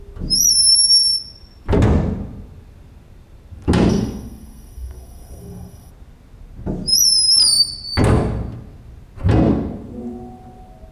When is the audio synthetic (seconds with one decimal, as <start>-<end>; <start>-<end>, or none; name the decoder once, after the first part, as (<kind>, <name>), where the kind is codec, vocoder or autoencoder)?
3.9-5.9 (codec, SNAC)